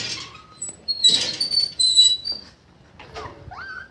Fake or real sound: fake